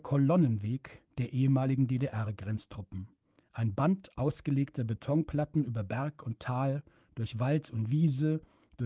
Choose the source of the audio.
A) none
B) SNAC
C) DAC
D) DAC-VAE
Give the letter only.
C